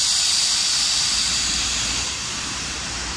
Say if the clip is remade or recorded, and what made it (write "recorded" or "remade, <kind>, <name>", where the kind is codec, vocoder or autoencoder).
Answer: remade, vocoder, BigVGAN v2